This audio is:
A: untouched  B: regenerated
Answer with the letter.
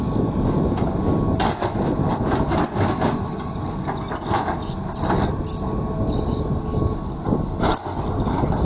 A